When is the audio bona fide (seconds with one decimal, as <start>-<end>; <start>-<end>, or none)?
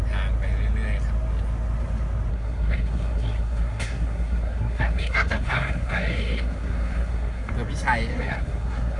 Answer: 0.0-2.3; 7.5-8.1